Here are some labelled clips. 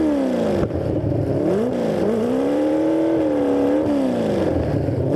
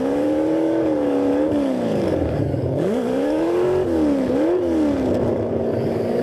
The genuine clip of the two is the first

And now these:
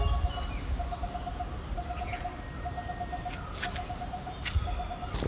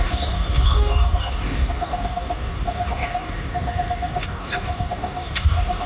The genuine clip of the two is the first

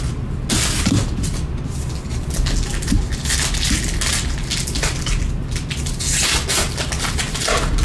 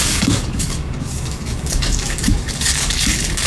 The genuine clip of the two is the first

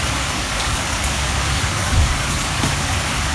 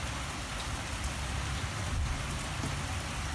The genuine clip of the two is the second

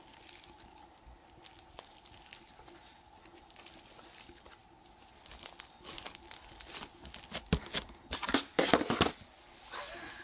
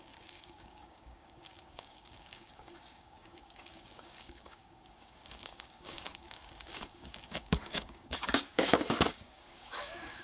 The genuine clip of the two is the first